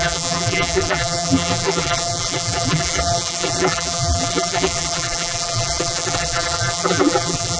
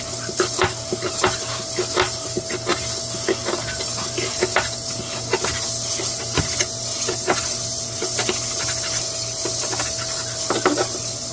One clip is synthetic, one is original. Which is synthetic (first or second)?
first